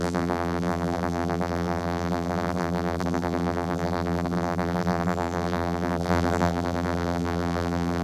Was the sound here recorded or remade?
remade